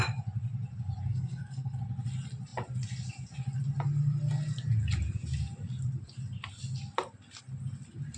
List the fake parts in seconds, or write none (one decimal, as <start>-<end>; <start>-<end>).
1.1-1.8